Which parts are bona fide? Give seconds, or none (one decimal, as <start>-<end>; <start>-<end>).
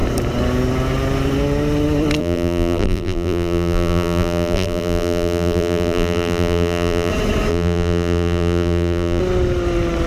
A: 0.0-2.2; 7.1-7.5; 9.2-10.1